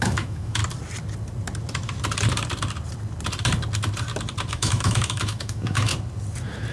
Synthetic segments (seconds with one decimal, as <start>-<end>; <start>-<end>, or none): 0.0-0.6; 4.5-5.9